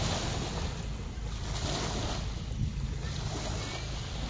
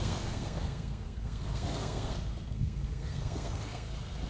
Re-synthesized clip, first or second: second